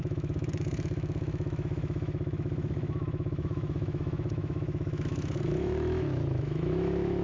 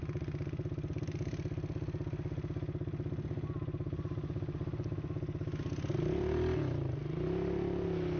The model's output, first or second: first